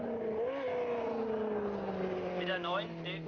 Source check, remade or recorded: recorded